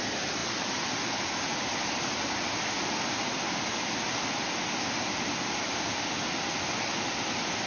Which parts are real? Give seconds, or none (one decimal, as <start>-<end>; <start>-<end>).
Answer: 0.0-7.7

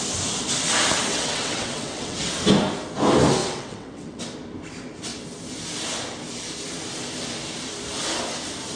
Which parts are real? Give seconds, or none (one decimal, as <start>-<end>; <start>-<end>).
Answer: 0.0-1.1; 2.3-3.4; 4.2-8.8

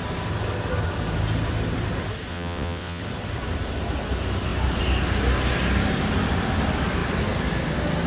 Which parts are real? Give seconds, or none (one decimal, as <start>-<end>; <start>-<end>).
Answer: 0.0-2.3; 3.0-8.1

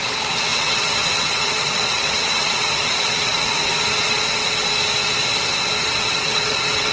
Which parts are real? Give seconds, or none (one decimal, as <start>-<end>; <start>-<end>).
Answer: 4.7-5.8

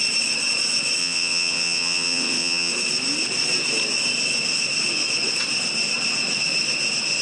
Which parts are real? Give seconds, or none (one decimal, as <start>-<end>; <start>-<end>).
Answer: 0.0-1.0; 2.7-7.2

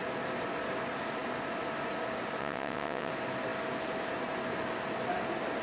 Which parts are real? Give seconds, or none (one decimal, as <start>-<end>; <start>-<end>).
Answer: 0.0-2.4; 3.1-5.6